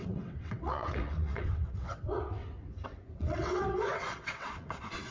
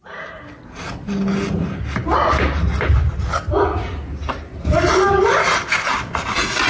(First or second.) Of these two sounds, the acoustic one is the second